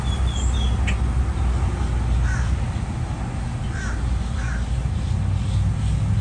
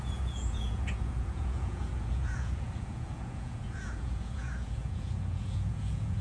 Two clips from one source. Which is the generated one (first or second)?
second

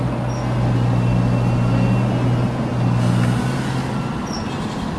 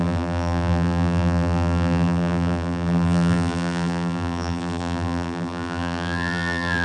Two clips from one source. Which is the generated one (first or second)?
second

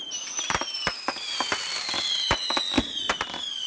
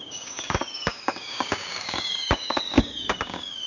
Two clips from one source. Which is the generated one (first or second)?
second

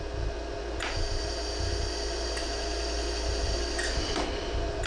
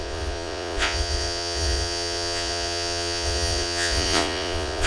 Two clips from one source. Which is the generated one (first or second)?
second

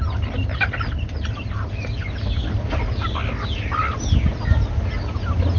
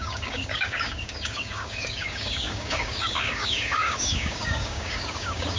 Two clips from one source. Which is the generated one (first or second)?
second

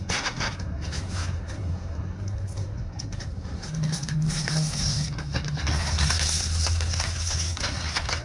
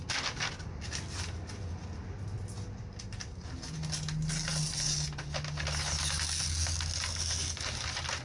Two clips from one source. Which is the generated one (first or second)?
first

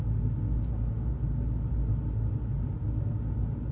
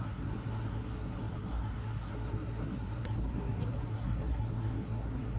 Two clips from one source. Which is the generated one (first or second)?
second